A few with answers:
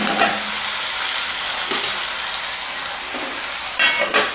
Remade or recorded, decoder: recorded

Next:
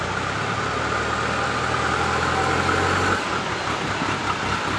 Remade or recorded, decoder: recorded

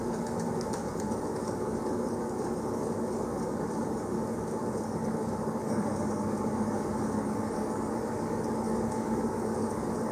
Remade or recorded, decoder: remade, codec, DAC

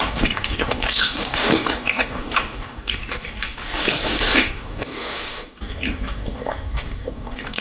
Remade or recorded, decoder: remade, codec, DAC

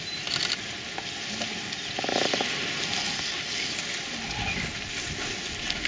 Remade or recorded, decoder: recorded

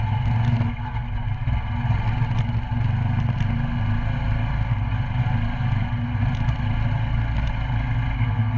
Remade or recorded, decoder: recorded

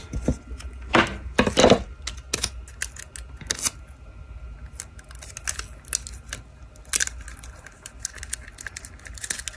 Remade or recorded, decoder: recorded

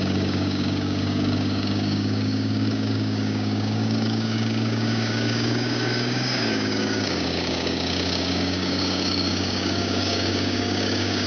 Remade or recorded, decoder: remade, codec, DAC